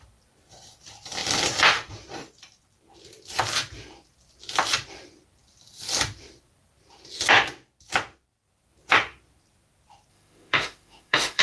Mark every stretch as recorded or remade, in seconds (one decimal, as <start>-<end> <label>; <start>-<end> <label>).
0.0-10.1 recorded; 10.1-11.4 remade